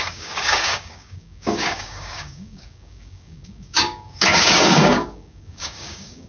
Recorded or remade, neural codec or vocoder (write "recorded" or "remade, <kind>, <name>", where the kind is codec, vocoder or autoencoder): remade, codec, DAC